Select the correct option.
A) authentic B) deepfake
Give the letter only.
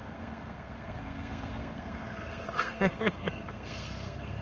B